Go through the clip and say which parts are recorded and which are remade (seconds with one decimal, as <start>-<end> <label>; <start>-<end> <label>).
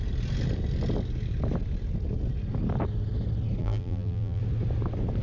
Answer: 0.0-3.6 recorded; 3.6-4.4 remade; 4.4-5.2 recorded